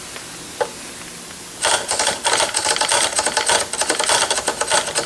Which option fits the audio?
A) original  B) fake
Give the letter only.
A